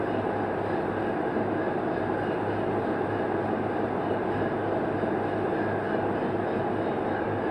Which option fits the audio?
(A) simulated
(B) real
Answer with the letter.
B